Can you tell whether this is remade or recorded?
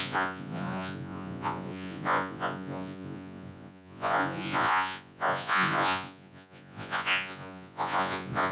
remade